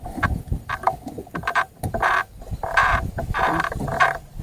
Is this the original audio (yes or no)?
no